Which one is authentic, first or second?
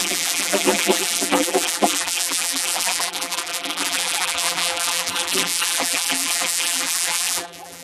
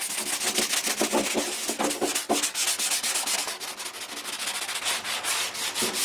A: second